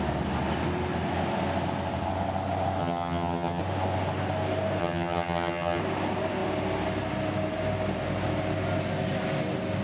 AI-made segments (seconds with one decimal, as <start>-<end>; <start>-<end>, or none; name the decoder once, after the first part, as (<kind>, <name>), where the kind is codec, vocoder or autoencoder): 2.8-3.6 (vocoder, HiFi-GAN); 4.8-5.8